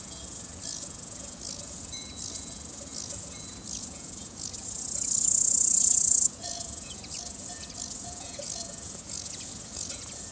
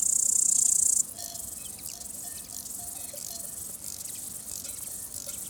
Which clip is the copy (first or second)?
first